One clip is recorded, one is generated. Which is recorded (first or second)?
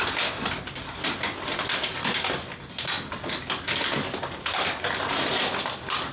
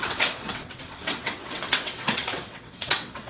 first